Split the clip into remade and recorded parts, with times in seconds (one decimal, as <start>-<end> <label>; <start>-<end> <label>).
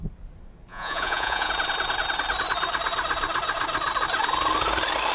0.0-0.7 recorded; 0.7-1.5 remade; 1.5-5.1 recorded